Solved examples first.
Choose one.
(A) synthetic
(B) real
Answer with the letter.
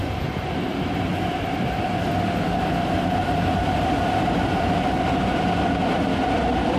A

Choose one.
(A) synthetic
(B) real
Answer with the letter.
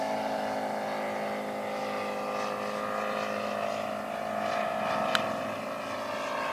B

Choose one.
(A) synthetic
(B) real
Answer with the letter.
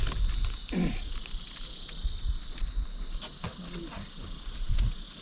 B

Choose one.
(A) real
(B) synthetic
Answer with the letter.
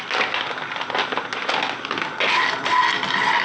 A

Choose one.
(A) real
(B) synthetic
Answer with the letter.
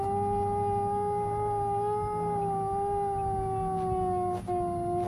A